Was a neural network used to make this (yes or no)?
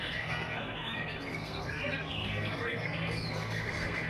yes